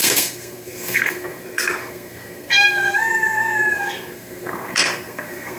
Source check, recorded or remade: remade